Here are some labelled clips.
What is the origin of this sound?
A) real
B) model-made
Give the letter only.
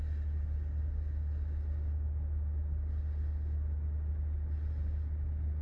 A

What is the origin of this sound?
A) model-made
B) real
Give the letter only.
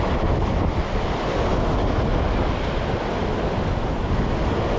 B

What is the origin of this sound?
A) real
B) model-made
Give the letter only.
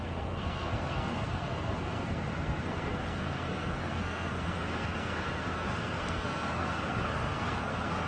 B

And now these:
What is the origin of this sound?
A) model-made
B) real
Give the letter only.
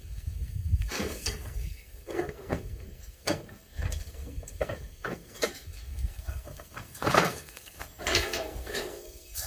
A